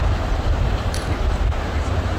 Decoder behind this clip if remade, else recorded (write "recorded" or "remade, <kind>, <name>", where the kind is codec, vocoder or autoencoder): remade, vocoder, BigVGAN v2